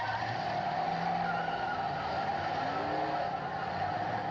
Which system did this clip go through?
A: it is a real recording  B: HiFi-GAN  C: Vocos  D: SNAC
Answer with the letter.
A